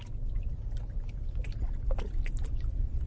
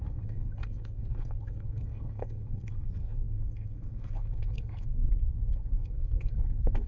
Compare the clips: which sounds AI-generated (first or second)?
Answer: second